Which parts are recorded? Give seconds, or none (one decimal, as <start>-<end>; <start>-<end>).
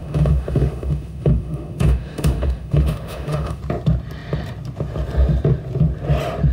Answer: 3.6-6.5